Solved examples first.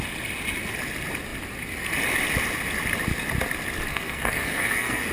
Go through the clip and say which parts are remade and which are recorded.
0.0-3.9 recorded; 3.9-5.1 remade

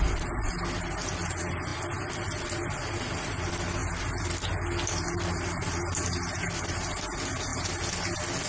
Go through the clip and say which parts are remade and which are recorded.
0.0-8.5 recorded